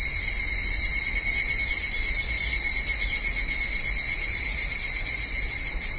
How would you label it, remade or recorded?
recorded